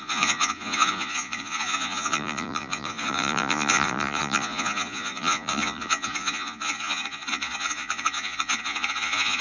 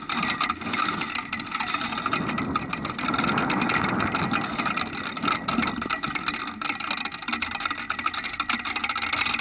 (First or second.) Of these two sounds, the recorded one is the second